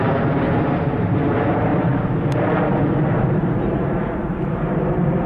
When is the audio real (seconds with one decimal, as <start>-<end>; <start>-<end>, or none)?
1.7-2.3